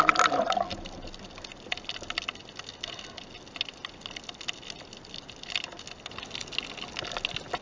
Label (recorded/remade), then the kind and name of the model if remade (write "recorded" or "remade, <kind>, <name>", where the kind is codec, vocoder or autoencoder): recorded